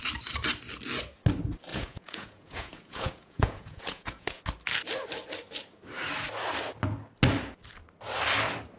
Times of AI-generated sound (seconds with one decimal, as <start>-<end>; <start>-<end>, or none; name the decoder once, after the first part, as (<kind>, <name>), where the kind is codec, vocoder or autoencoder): 1.7-4.4 (vocoder, Vocos)